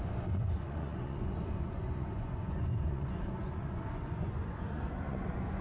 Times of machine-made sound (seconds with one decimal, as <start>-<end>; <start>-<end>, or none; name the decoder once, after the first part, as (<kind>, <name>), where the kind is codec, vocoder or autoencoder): 0.0-5.6 (vocoder, Vocos)